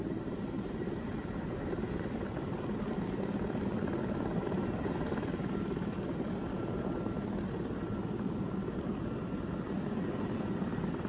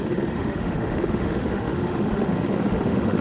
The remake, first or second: second